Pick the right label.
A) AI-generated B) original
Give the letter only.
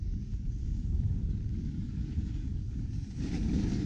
A